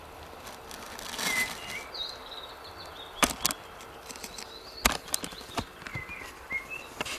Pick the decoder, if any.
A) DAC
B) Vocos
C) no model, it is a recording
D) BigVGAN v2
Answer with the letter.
C